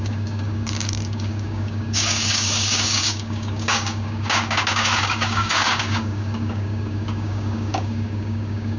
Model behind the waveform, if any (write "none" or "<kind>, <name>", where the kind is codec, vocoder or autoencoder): codec, DAC